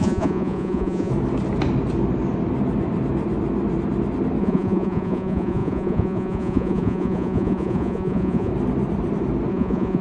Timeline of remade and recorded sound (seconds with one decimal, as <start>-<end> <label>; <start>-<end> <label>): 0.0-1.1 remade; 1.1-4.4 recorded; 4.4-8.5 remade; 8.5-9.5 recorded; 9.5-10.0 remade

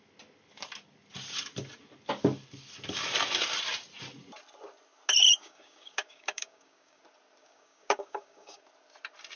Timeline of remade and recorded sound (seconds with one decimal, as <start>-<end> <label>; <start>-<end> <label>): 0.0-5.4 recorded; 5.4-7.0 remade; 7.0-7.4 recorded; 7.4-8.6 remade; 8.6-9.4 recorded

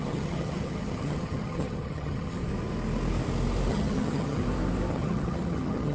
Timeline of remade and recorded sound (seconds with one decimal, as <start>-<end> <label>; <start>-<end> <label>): 0.0-2.4 remade; 2.4-3.7 recorded; 3.7-4.4 remade; 4.4-4.9 recorded; 4.9-5.9 remade

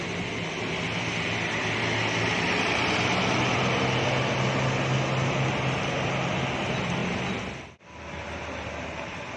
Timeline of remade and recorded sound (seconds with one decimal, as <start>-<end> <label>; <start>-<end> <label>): 0.0-9.4 recorded

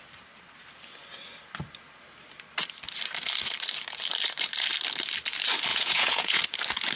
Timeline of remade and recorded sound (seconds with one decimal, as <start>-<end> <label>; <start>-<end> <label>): 0.0-5.7 recorded; 5.7-6.4 remade; 6.4-7.0 recorded

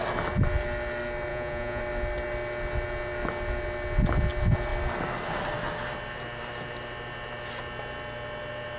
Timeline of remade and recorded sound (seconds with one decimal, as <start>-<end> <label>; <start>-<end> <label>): 0.0-1.3 recorded; 1.3-1.8 remade; 1.8-8.8 recorded